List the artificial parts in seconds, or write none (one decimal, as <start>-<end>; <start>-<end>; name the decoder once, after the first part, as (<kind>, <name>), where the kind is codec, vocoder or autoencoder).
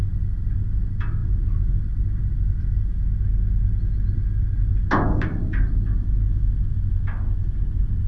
1.2-1.8 (vocoder, BigVGAN v2); 5.3-6.4